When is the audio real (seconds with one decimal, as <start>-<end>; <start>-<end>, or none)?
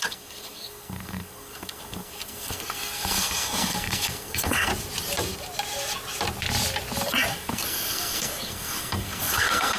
4.7-7.3